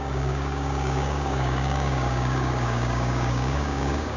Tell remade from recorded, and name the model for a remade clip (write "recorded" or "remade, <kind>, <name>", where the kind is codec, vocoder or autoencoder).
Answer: remade, codec, DAC